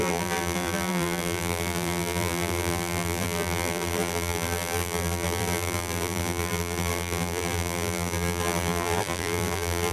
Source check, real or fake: fake